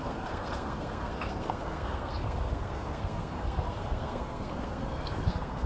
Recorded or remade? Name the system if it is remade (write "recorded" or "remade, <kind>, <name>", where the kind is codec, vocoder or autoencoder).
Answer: remade, codec, SNAC